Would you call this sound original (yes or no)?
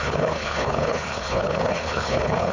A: no